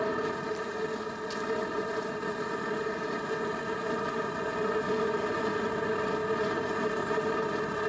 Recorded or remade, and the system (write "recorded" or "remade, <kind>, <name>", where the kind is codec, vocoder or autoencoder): recorded